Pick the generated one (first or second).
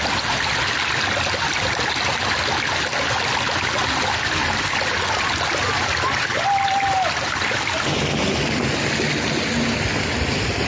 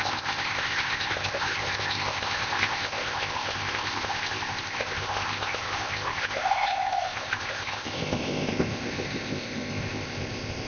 second